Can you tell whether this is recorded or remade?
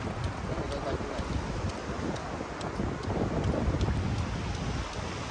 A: recorded